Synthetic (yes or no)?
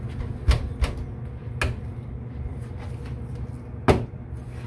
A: no